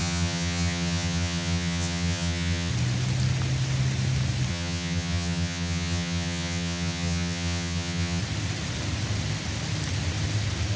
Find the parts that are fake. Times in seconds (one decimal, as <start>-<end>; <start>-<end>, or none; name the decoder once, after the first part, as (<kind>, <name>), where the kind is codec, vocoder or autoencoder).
0.0-2.7 (vocoder, HiFi-GAN); 4.5-8.2

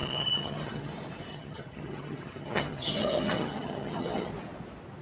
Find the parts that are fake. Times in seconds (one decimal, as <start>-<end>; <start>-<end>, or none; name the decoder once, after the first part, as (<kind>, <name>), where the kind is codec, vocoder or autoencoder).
0.0-0.9 (vocoder, HiFi-GAN); 1.3-4.3

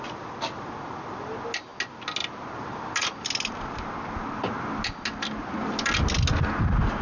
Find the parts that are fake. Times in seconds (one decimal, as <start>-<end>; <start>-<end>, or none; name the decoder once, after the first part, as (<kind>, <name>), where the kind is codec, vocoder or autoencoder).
none

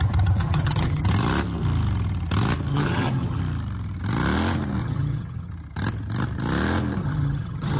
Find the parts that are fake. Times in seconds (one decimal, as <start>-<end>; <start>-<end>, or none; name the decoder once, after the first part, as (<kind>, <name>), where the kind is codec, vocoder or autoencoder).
0.4-1.0 (vocoder, HiFi-GAN); 2.7-3.4; 4.8-5.5; 7.0-7.8